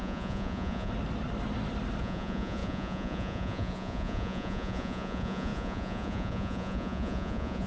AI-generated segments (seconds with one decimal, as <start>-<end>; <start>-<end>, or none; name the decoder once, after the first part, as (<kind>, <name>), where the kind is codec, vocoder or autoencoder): 0.0-0.9 (vocoder, Vocos); 2.0-7.7